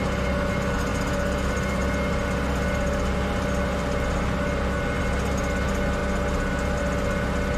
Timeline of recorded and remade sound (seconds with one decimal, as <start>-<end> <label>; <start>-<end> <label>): 0.0-7.6 recorded